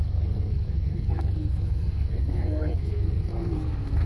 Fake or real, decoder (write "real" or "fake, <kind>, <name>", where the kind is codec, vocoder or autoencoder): fake, codec, SNAC